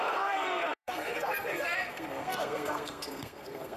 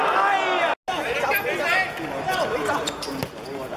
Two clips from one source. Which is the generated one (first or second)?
first